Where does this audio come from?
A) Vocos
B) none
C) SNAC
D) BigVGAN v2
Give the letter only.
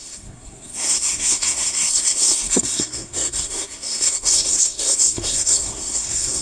C